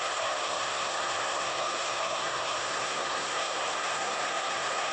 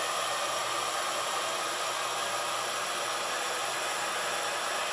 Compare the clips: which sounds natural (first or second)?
second